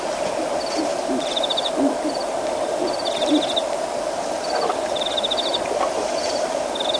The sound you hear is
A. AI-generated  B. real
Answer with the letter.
B